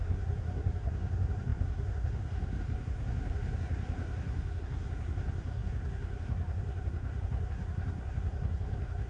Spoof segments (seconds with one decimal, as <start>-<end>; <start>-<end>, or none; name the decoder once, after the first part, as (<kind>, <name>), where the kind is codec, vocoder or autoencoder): 0.0-9.1 (codec, SNAC)